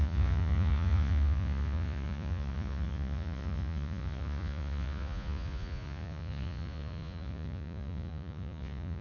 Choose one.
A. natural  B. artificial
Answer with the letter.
B